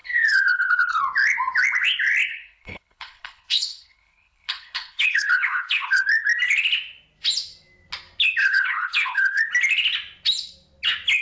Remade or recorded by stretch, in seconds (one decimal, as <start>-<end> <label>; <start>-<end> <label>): 0.0-1.0 remade; 1.0-2.3 recorded; 2.3-6.0 remade; 6.0-8.4 recorded; 8.4-9.4 remade; 9.4-11.2 recorded